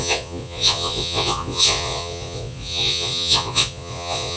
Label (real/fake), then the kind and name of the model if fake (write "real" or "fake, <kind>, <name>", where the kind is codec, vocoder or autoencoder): fake, vocoder, Vocos